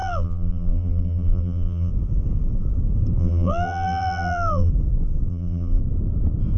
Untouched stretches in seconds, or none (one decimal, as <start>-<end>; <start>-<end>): 1.9-3.2; 4.7-5.3; 5.8-6.6